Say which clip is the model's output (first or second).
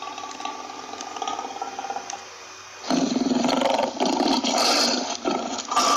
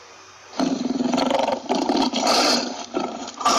second